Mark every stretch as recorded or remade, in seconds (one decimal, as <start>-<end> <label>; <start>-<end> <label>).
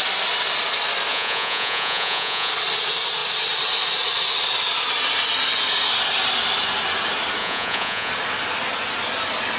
0.0-1.1 recorded; 1.1-2.5 remade; 2.5-7.4 recorded; 7.4-8.1 remade; 8.1-9.6 recorded